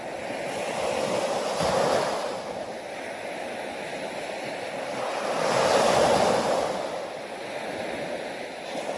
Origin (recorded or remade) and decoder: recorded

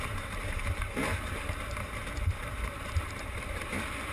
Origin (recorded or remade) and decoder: remade, vocoder, BigVGAN v2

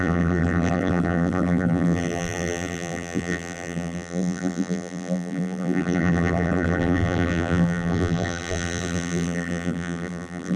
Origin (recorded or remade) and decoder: remade, vocoder, BigVGAN v2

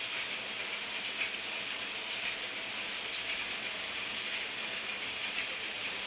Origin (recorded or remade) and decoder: recorded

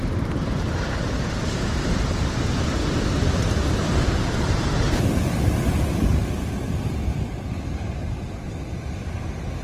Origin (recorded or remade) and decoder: remade, vocoder, BigVGAN v2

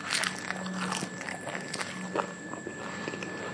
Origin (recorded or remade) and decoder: recorded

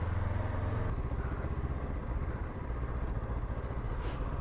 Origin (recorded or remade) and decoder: recorded